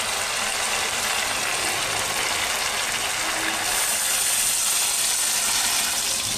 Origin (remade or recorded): recorded